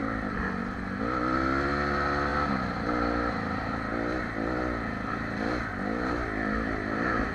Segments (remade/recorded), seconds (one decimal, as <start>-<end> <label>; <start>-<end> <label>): 0.0-0.7 remade; 0.7-7.3 recorded